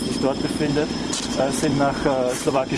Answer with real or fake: fake